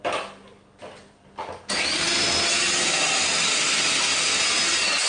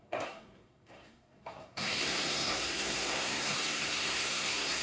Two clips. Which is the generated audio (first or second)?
second